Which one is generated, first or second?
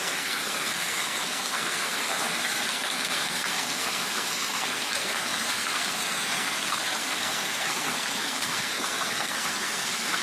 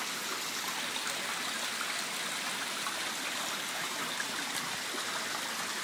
first